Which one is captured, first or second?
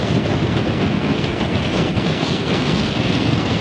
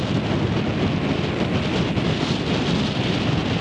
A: second